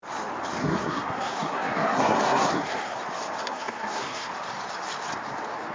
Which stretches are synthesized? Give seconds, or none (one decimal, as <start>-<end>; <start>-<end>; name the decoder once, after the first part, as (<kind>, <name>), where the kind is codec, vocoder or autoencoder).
0.6-3.0 (codec, SNAC); 3.4-4.3